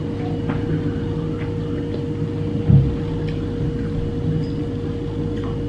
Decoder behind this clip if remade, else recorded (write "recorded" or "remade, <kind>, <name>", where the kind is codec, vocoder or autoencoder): recorded